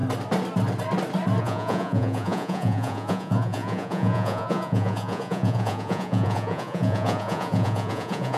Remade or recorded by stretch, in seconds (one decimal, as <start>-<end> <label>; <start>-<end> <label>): 0.0-1.4 recorded; 1.4-8.4 remade